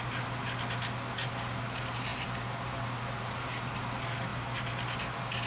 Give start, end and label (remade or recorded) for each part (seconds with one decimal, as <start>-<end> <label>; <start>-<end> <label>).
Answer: 0.0-5.5 recorded